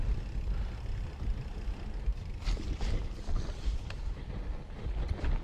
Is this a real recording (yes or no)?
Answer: yes